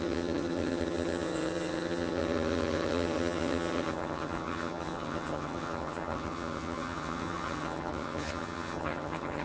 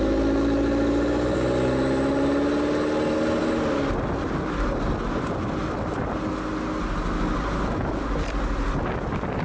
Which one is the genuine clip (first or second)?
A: second